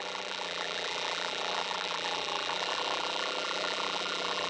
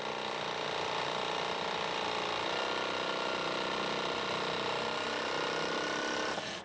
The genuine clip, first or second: second